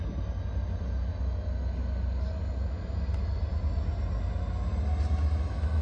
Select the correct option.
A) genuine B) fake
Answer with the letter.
A